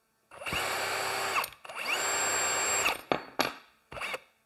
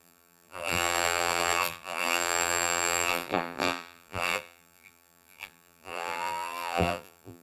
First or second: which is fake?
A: second